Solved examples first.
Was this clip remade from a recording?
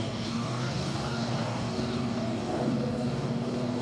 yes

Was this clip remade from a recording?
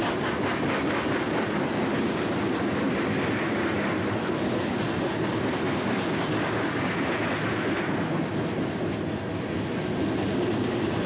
no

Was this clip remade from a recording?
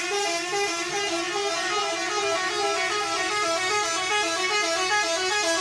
no